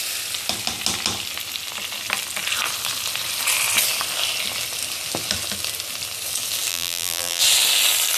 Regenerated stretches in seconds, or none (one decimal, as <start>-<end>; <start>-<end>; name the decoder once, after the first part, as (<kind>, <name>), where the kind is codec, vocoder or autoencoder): 6.7-7.4 (vocoder, BigVGAN v2)